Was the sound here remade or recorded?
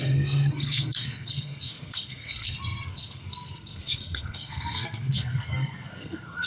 remade